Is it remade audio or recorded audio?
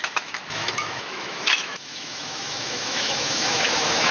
remade